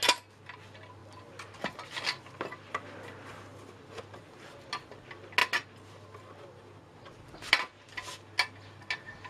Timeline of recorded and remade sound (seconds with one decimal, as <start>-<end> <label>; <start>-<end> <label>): 0.0-9.3 recorded